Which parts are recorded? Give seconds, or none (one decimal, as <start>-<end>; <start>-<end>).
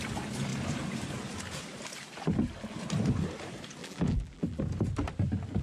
0.0-3.8; 4.6-5.6